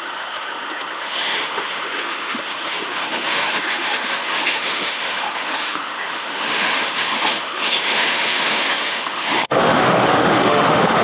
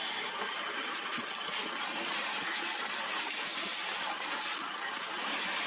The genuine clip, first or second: second